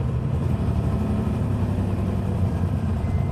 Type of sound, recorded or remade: remade